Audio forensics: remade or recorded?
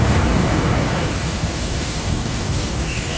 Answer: remade